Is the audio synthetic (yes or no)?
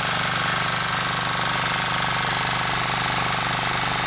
no